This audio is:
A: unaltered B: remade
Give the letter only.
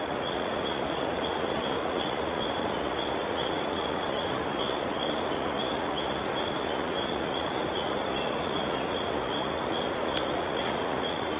B